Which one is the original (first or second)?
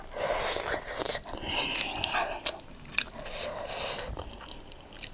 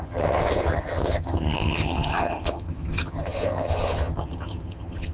first